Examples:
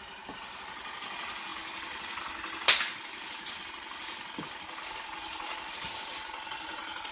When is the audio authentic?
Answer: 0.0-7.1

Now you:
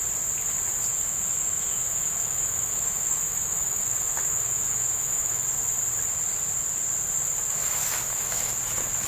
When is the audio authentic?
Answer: 0.0-0.9; 5.4-7.6; 8.5-9.1